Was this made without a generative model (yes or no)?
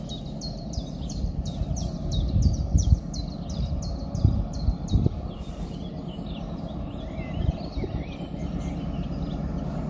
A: yes